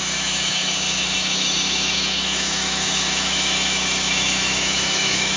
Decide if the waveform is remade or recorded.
remade